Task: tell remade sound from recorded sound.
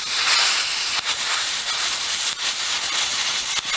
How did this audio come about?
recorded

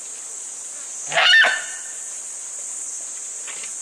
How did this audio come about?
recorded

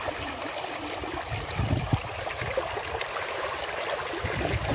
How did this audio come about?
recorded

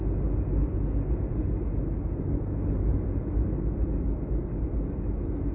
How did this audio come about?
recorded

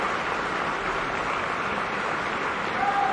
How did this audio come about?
recorded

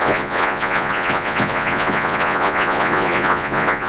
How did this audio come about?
remade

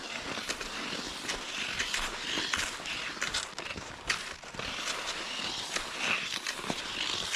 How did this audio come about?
recorded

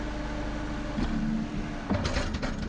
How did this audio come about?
recorded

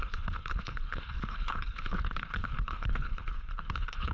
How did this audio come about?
remade